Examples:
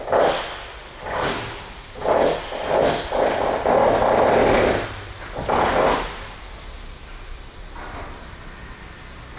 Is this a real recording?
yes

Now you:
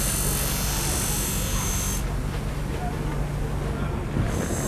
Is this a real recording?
yes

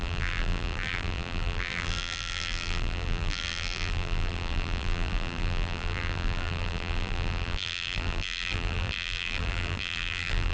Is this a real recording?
no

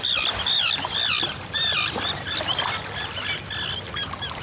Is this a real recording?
yes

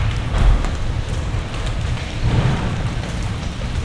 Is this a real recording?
no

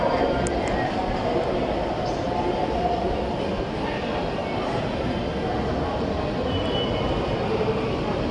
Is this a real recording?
yes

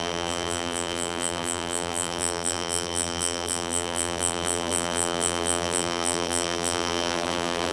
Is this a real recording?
no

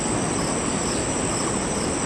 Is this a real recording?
yes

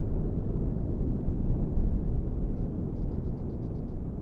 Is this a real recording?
yes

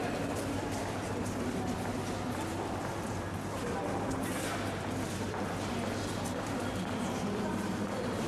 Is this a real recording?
no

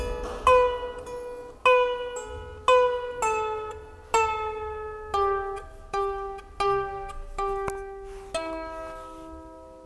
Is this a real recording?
yes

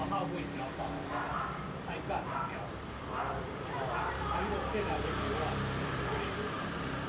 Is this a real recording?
no